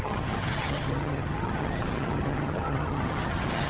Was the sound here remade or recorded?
remade